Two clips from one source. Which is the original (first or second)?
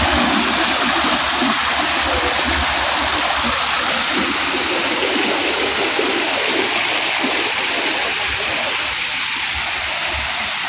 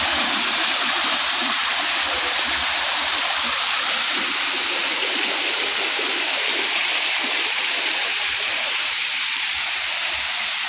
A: first